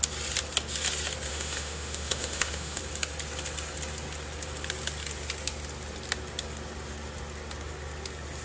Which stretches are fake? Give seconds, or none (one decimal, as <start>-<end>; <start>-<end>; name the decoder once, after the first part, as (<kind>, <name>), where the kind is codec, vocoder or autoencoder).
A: 1.3-2.8 (autoencoder, DAC-VAE)